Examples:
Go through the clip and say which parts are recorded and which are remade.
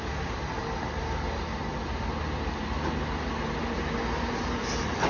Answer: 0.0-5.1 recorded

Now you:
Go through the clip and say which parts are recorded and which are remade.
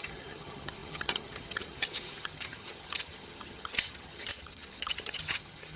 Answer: 0.0-5.8 remade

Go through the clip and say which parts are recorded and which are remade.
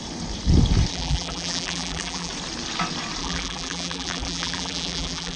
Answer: 0.0-0.9 recorded; 0.9-2.3 remade; 2.3-3.2 recorded; 3.2-5.4 remade